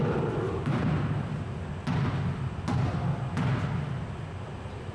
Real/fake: real